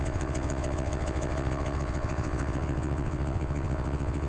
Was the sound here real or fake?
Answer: fake